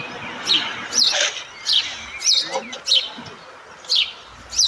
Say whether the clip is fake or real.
real